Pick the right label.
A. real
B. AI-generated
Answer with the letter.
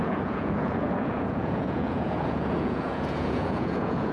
B